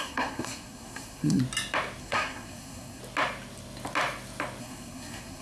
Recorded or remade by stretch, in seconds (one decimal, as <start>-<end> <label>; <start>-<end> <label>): 0.0-1.4 remade; 1.4-2.0 recorded; 2.0-3.0 remade; 3.0-4.6 recorded; 4.6-5.4 remade